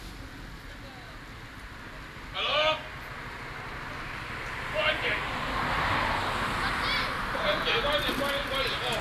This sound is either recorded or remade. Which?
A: recorded